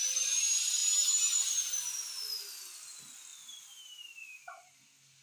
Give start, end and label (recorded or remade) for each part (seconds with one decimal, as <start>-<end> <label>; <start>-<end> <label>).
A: 0.0-3.3 recorded; 3.3-4.8 remade; 4.8-5.2 recorded